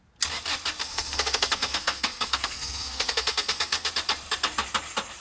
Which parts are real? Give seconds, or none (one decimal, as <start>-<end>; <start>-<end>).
0.0-0.8; 3.9-5.2